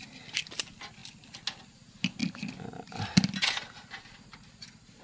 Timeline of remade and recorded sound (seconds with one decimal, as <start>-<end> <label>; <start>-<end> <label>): 0.0-5.0 recorded